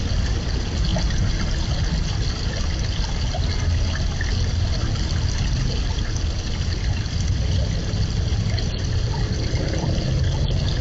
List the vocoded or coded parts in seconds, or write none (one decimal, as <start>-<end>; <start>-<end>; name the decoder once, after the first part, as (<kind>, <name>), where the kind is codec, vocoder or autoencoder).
none